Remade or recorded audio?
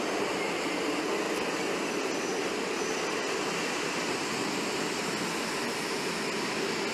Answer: recorded